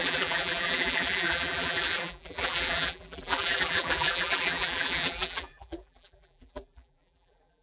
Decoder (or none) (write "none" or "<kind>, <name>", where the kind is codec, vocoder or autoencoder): vocoder, BigVGAN v2